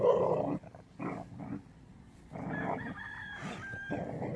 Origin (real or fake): real